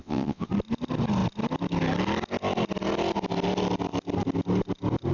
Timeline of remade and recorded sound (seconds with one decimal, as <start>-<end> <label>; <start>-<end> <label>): 0.0-0.5 remade; 0.5-5.1 recorded